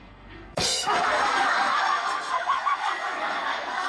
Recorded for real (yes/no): no